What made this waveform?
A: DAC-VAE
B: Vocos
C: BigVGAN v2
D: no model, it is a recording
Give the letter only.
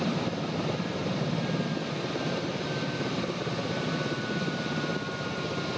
D